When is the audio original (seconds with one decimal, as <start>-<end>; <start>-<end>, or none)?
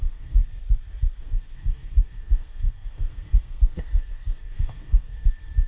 0.4-1.2